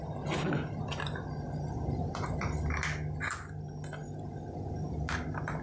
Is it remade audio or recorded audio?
recorded